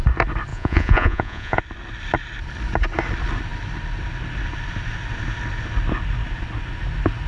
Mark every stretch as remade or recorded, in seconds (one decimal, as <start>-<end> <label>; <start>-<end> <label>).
0.0-0.5 recorded; 0.5-1.6 remade; 1.6-7.3 recorded